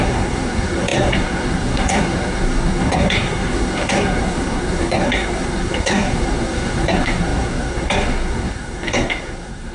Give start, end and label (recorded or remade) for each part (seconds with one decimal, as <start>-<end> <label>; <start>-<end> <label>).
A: 0.0-9.7 remade